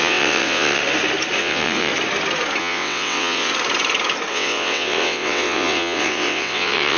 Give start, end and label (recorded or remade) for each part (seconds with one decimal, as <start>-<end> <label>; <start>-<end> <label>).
0.0-0.8 remade; 0.8-1.4 recorded; 1.4-1.9 remade; 1.9-2.6 recorded; 2.6-3.5 remade; 3.5-4.3 recorded; 4.3-7.0 remade